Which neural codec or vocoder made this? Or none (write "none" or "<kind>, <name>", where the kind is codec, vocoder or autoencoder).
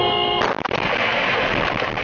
none